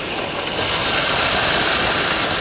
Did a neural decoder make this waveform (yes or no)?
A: no